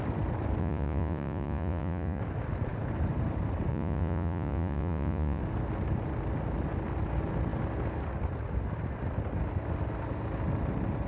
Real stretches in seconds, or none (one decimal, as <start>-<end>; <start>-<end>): 0.0-0.6; 2.2-3.7; 5.4-11.1